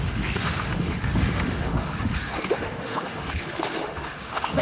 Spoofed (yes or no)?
yes